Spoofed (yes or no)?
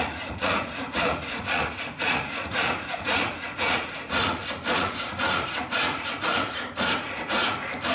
yes